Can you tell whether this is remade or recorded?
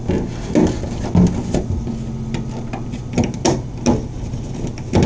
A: recorded